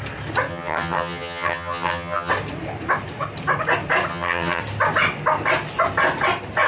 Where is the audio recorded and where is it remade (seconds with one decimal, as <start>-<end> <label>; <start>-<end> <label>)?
0.0-0.5 recorded; 0.5-2.3 remade; 2.3-4.1 recorded; 4.1-4.6 remade; 4.6-6.7 recorded